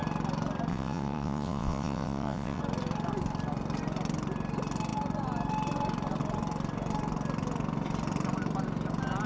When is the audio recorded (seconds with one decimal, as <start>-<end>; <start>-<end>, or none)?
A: 0.0-0.7; 2.6-9.3